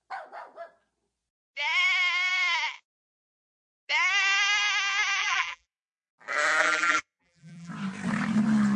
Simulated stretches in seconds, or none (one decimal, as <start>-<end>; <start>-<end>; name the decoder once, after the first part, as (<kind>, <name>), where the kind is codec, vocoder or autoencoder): 5.2-6.1 (vocoder, BigVGAN v2); 6.6-7.7